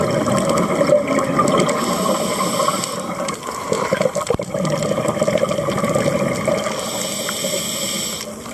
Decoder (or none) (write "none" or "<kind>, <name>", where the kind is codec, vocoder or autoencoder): none